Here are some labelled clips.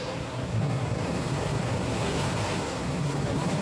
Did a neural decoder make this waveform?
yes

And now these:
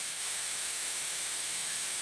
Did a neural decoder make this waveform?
yes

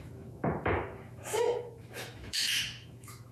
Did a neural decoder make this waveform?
yes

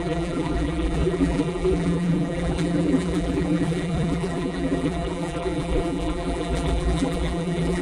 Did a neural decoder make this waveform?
yes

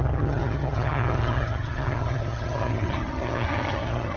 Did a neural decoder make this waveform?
yes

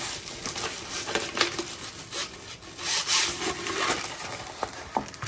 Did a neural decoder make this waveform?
no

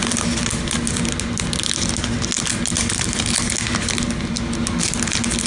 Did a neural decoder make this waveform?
no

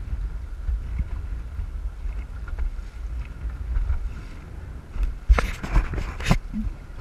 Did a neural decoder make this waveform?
no